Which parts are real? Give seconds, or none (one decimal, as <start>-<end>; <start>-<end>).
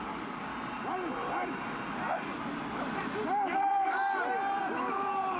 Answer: 0.5-3.7; 4.2-5.4